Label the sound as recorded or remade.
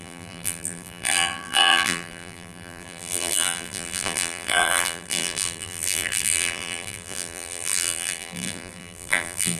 remade